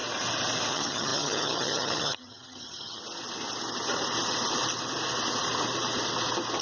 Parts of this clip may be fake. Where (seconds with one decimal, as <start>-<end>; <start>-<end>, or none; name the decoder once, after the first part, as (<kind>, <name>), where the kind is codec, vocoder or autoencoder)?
0.7-3.0 (vocoder, HiFi-GAN)